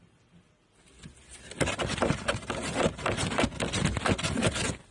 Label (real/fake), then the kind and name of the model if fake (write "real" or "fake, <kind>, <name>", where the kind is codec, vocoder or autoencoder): real